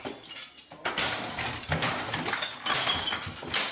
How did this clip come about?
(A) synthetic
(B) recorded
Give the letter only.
B